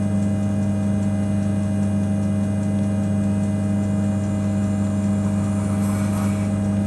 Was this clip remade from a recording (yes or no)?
no